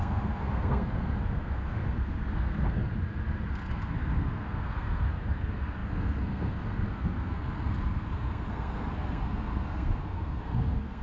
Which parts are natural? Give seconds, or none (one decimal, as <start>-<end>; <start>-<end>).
2.9-3.5